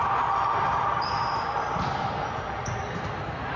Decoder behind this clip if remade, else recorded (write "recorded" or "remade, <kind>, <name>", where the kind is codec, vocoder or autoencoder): recorded